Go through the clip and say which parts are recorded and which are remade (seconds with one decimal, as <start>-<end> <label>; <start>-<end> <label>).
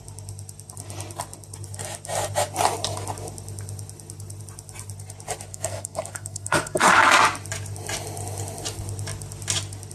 0.0-5.5 recorded; 5.5-6.9 remade; 6.9-9.9 recorded